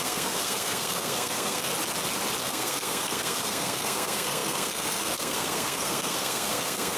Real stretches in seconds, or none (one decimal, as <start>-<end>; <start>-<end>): 1.7-2.4